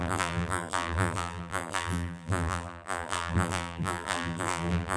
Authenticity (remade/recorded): remade